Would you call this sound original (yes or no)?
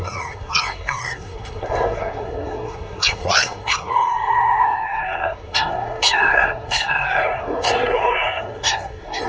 no